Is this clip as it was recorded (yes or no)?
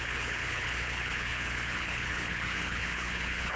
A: no